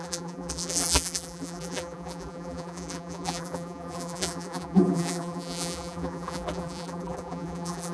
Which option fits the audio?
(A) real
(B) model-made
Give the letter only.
B